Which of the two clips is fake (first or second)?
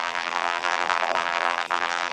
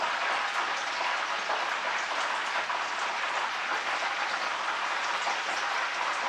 first